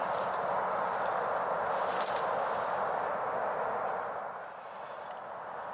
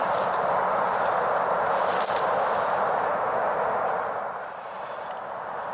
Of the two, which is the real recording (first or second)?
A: first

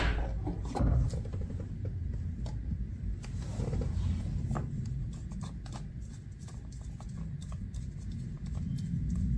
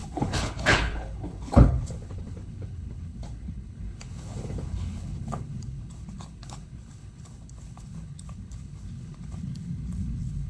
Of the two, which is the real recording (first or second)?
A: first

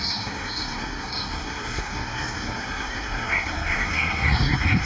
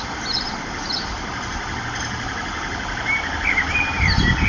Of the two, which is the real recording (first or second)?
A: second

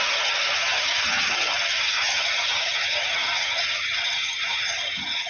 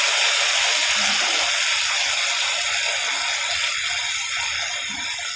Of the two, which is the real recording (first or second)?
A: second